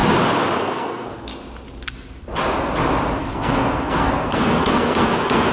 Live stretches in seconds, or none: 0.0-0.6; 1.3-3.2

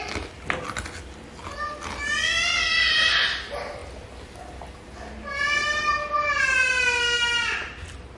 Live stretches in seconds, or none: 0.0-8.2

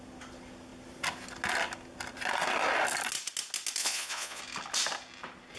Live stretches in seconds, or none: 0.0-3.8; 4.4-5.6

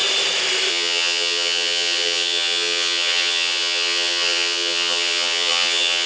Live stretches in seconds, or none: 0.0-0.7